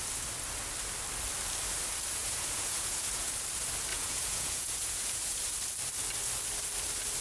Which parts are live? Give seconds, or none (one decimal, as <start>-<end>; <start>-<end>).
0.0-2.2; 3.3-3.9; 5.4-7.2